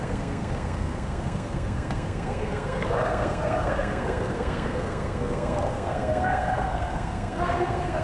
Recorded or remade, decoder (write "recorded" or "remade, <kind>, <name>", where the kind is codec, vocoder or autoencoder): remade, codec, SNAC